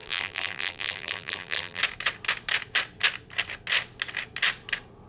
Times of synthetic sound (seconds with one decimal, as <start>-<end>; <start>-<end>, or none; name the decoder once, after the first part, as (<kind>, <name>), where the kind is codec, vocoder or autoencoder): 0.0-1.8 (vocoder, BigVGAN v2)